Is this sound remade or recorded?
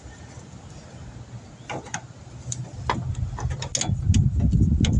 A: recorded